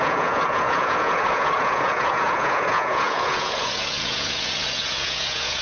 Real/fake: fake